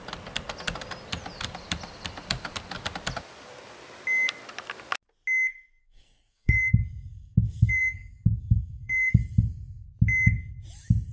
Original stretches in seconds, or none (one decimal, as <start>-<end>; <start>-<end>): 0.0-5.8; 9.2-11.1